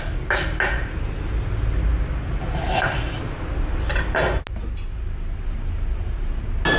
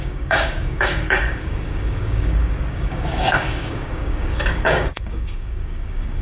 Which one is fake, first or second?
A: second